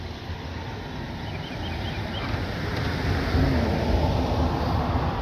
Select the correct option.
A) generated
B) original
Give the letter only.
B